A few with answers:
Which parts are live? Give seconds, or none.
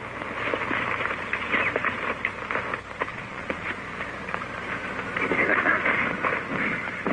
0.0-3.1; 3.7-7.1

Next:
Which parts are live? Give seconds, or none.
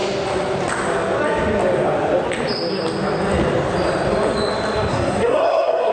0.0-4.9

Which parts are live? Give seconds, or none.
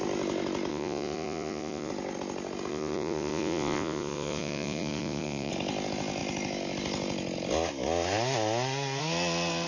0.0-0.7; 1.9-2.7; 5.5-9.7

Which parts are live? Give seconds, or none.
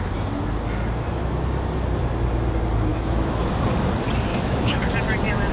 0.0-2.9; 3.5-4.3; 4.8-5.5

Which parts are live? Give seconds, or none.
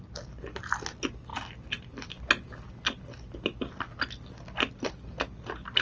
0.0-5.8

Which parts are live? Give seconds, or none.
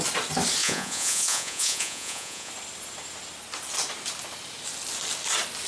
0.0-0.6; 2.5-5.7